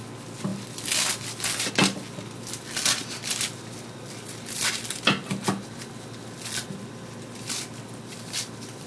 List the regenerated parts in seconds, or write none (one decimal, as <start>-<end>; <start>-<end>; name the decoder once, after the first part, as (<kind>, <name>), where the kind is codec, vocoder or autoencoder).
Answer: none